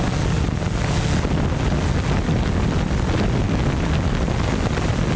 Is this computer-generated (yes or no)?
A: no